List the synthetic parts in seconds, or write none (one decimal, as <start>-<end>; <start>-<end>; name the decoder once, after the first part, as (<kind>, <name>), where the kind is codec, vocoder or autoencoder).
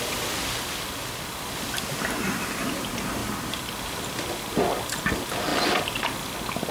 none